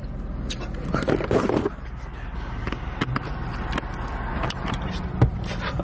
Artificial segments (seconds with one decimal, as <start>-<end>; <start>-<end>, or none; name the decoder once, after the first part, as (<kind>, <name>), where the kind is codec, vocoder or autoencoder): 4.3-5.0 (vocoder, BigVGAN v2)